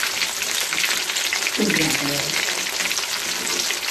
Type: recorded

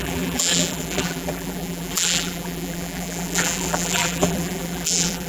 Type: remade